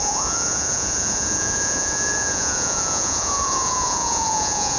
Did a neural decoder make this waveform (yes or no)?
yes